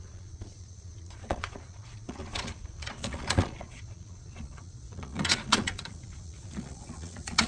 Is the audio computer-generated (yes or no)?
yes